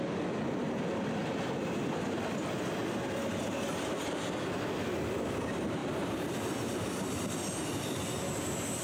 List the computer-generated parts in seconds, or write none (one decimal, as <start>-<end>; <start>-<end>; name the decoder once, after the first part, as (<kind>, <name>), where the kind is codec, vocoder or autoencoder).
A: 5.8-7.3 (vocoder, BigVGAN v2)